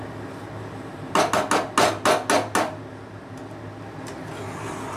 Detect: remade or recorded recorded